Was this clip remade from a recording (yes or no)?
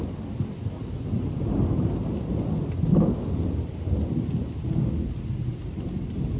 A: no